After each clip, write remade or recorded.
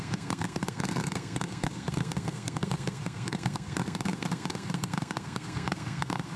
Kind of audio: remade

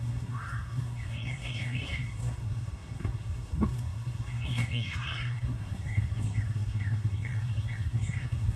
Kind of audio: remade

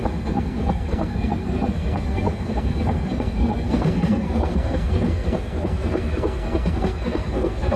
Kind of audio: remade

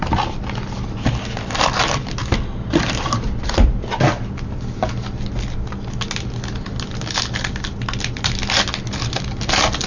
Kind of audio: recorded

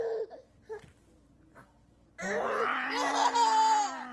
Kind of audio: recorded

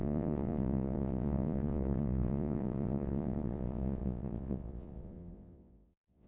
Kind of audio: remade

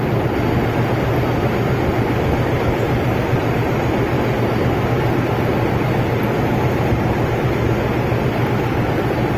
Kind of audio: recorded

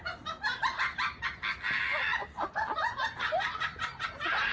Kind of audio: recorded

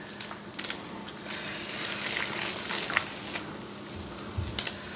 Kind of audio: recorded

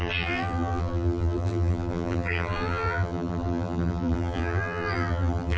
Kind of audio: remade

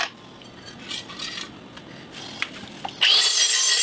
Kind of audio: remade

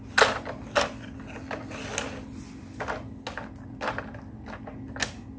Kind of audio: recorded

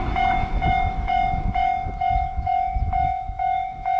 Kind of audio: remade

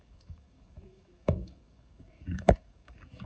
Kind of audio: remade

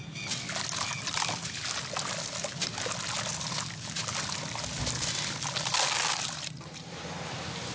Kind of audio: recorded